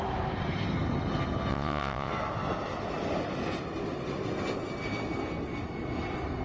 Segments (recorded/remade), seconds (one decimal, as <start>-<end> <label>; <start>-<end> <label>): 0.0-1.5 recorded; 1.5-2.1 remade; 2.1-6.4 recorded